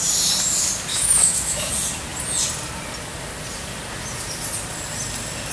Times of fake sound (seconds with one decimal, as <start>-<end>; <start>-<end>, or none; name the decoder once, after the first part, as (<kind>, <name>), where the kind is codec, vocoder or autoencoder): 0.9-1.7 (autoencoder, DAC-VAE)